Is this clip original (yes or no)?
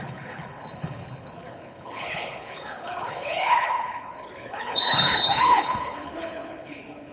no